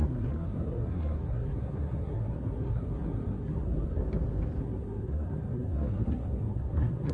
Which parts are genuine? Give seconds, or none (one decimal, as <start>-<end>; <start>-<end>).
4.0-4.6